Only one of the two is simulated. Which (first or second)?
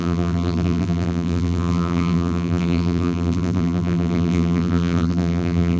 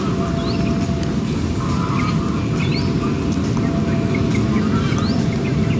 first